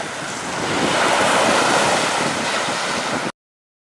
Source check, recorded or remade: recorded